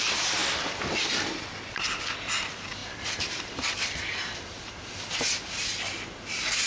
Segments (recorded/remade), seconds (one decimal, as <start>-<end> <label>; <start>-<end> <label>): 0.0-0.4 recorded; 0.4-1.0 remade; 1.0-2.8 recorded; 2.8-4.8 remade; 4.8-6.7 recorded